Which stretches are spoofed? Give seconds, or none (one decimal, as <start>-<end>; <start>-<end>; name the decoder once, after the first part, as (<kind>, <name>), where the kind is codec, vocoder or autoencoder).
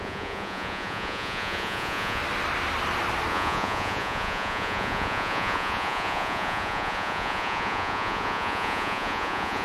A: 0.0-2.2 (vocoder, Vocos); 3.3-9.6